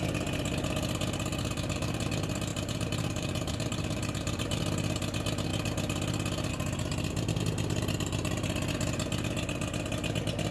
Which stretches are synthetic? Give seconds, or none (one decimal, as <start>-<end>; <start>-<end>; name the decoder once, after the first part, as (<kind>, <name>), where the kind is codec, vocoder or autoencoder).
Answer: 1.3-2.1 (vocoder, BigVGAN v2); 2.5-4.6